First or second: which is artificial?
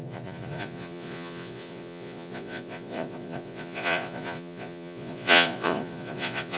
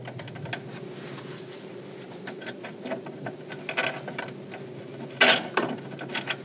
first